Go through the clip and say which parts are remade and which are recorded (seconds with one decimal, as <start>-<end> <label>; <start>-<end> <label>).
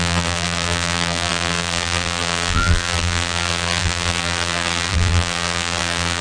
0.0-6.2 remade